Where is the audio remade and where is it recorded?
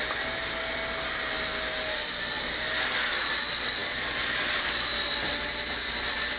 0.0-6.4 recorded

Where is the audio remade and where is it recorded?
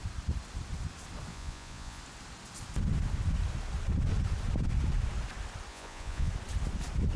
0.0-1.3 recorded; 1.3-2.0 remade; 2.0-5.7 recorded; 5.7-6.3 remade; 6.3-7.2 recorded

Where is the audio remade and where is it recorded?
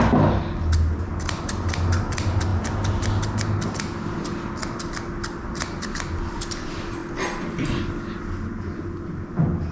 0.0-9.7 recorded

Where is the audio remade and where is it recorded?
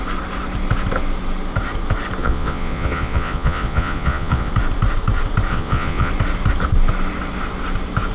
0.0-2.2 recorded; 2.2-4.5 remade; 4.5-5.5 recorded; 5.5-6.1 remade; 6.1-8.1 recorded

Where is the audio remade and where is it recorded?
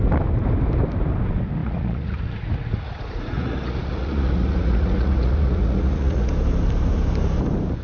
0.0-1.6 recorded; 1.6-6.3 remade; 6.3-7.8 recorded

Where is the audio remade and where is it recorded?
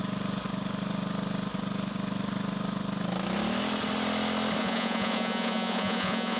0.0-4.6 recorded; 4.6-6.4 remade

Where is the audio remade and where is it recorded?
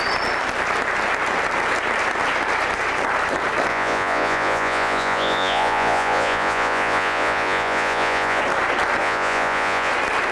0.0-3.7 recorded; 3.7-8.4 remade; 8.4-9.0 recorded; 9.0-9.9 remade; 9.9-10.3 recorded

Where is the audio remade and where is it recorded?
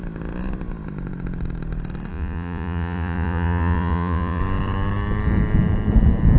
0.0-2.1 recorded; 2.1-4.4 remade; 4.4-6.4 recorded